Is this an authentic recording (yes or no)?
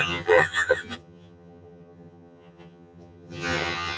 no